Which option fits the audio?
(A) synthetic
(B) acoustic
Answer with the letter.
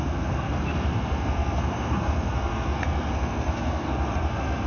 A